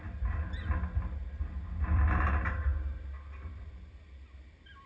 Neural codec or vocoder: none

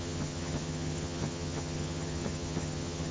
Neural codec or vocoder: vocoder, HiFi-GAN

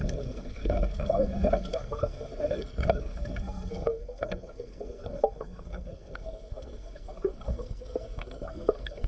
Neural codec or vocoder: codec, SNAC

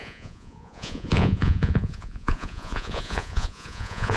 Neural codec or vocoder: vocoder, Vocos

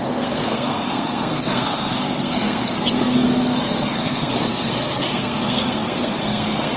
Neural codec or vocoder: codec, SNAC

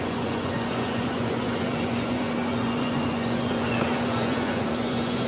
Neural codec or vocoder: vocoder, Vocos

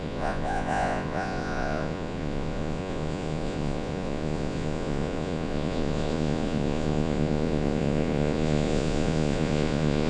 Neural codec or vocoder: vocoder, Vocos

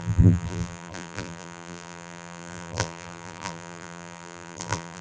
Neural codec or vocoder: vocoder, BigVGAN v2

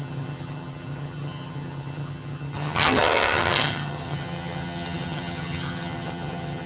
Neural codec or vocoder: vocoder, HiFi-GAN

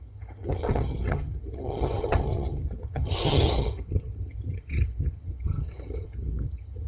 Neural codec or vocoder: vocoder, HiFi-GAN